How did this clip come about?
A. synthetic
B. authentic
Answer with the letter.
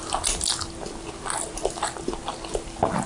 B